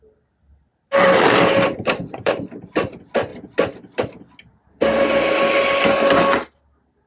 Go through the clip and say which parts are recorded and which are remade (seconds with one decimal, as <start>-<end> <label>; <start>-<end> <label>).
0.0-0.7 recorded; 0.7-2.9 remade; 2.9-7.1 recorded